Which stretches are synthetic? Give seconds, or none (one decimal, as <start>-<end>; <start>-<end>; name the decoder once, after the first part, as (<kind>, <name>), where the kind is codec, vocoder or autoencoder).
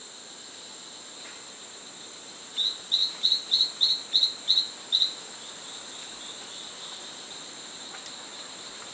none